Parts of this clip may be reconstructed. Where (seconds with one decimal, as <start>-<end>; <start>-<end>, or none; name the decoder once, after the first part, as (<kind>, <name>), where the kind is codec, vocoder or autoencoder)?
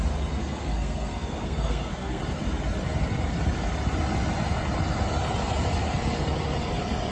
0.4-2.2 (codec, SNAC)